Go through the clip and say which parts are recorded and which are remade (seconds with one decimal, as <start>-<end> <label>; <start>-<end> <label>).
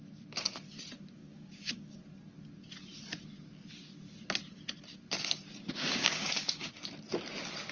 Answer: 0.0-1.2 recorded; 1.2-2.0 remade; 2.0-5.8 recorded; 5.8-6.7 remade; 6.7-7.7 recorded